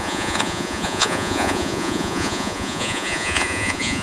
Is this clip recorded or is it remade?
remade